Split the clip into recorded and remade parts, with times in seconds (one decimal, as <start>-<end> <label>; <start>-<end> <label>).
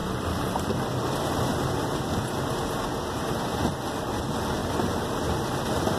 0.0-2.0 remade; 2.0-4.6 recorded; 4.6-5.1 remade; 5.1-6.0 recorded